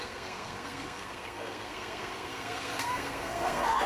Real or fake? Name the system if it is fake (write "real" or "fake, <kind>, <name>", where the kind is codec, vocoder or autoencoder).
fake, codec, SNAC